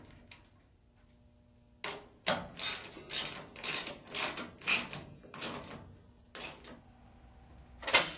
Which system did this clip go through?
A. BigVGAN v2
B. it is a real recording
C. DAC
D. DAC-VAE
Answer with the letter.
B